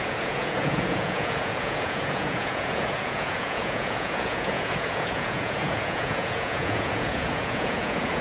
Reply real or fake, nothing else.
fake